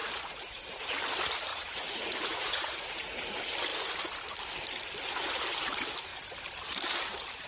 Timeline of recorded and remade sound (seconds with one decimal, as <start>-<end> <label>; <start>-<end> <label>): 0.0-0.8 remade; 0.8-1.5 recorded; 1.5-3.2 remade; 3.2-7.5 recorded